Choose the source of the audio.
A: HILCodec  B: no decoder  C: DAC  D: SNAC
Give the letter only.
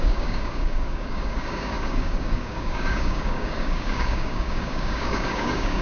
C